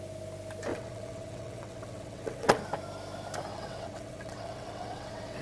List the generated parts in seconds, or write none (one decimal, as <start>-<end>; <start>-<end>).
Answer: 0.7-2.6; 3.5-5.4